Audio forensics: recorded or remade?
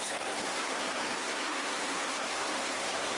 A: remade